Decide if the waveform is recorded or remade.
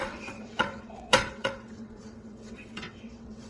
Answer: remade